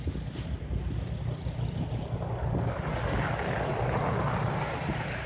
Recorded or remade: recorded